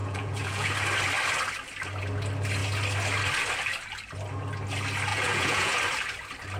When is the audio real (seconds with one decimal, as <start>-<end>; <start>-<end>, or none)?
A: 0.7-5.1; 5.8-6.6